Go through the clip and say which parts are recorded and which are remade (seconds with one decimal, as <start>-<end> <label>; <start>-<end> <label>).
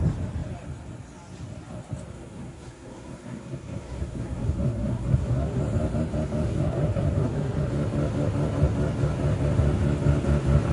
0.0-2.1 recorded; 2.1-5.6 remade; 5.6-6.5 recorded; 6.5-7.7 remade; 7.7-10.7 recorded